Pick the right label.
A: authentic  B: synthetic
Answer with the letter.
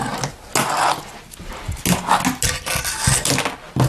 A